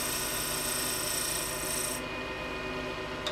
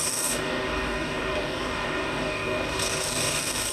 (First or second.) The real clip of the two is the first